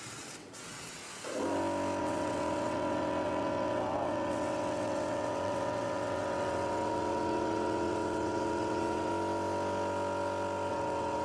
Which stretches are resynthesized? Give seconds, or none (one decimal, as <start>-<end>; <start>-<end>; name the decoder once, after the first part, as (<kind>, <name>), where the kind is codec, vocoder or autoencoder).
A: 0.0-1.0 (vocoder, WaveNeXt); 2.0-9.1; 10.7-11.2